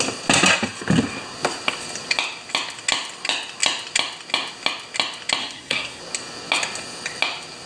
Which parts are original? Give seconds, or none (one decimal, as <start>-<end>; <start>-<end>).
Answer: 0.0-5.4; 6.0-7.7